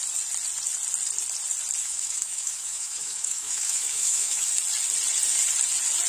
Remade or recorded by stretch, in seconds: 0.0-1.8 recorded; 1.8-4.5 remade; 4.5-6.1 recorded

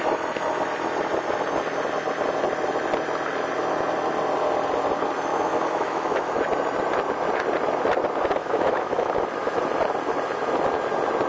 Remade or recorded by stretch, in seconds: 0.0-5.3 recorded; 5.3-6.4 remade; 6.4-8.4 recorded; 8.4-9.1 remade; 9.1-11.3 recorded

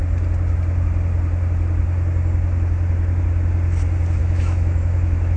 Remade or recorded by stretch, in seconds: 0.0-4.2 recorded; 4.2-5.4 remade